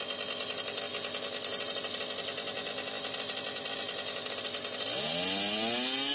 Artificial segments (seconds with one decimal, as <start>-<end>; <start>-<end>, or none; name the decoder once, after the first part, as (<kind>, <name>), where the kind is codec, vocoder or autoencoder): none